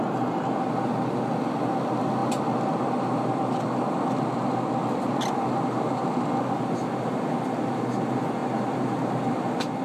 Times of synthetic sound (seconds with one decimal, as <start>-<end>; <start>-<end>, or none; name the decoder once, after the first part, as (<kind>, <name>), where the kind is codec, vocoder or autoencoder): none